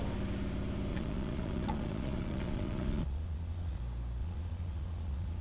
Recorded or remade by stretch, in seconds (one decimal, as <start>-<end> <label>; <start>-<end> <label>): 0.0-0.9 recorded; 0.9-3.8 remade; 3.8-4.2 recorded; 4.2-5.4 remade